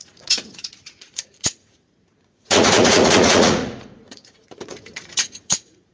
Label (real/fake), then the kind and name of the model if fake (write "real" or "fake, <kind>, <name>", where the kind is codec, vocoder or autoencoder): fake, vocoder, Vocos